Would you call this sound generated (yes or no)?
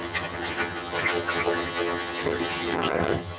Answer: yes